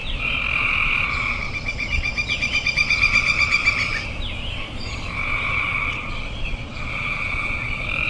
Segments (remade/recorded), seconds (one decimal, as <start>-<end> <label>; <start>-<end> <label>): 0.0-3.6 remade; 3.6-5.5 recorded; 5.5-8.1 remade

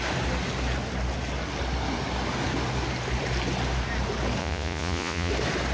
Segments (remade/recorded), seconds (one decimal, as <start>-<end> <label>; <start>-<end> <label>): 0.0-4.4 recorded; 4.4-5.3 remade; 5.3-5.7 recorded

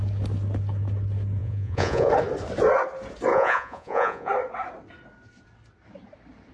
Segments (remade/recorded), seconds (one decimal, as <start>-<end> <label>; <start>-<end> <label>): 0.0-1.4 recorded; 1.4-2.1 remade; 2.1-3.3 recorded; 3.3-4.3 remade; 4.3-6.5 recorded

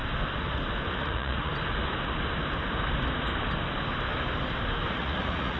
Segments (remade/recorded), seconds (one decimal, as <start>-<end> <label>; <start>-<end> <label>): 0.0-0.9 recorded; 0.9-1.5 remade; 1.5-4.9 recorded; 4.9-5.6 remade